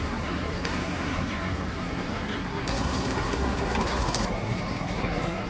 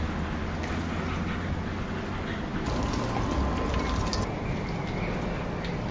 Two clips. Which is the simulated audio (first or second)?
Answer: first